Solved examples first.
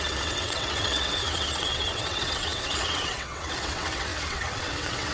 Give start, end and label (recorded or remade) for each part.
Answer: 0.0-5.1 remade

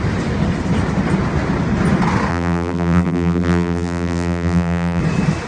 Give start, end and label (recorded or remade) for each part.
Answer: 0.0-2.3 recorded; 2.3-5.0 remade; 5.0-5.5 recorded

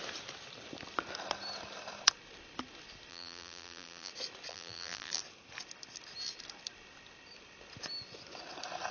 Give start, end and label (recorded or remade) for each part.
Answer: 0.0-3.1 recorded; 3.1-4.1 remade; 4.1-4.5 recorded; 4.5-5.2 remade; 5.2-8.9 recorded

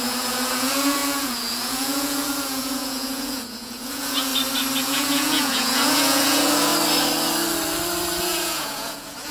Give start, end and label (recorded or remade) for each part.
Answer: 0.0-4.3 remade; 4.3-4.8 recorded; 4.8-6.7 remade; 6.7-8.2 recorded; 8.2-9.3 remade

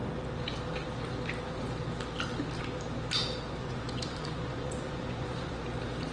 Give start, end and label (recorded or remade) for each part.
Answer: 0.0-3.6 recorded; 3.6-5.6 remade; 5.6-6.1 recorded

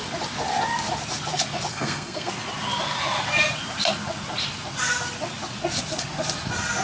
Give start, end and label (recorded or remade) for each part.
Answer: 0.0-1.7 recorded; 1.7-2.3 remade; 2.3-6.8 recorded

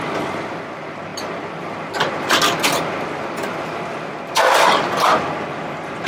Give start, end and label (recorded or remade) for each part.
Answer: 0.0-6.1 remade